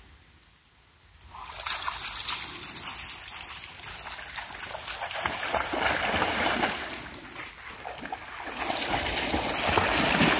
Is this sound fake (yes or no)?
no